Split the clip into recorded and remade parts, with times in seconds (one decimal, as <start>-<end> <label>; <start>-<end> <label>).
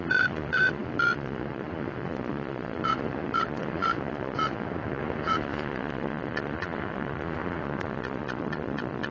0.0-9.1 remade